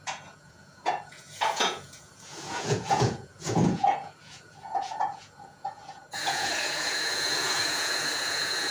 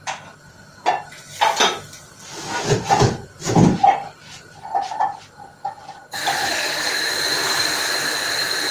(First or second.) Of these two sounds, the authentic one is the second